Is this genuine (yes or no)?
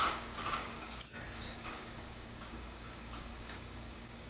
no